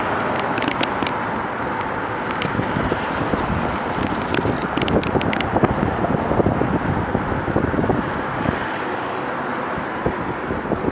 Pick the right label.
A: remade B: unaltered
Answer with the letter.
B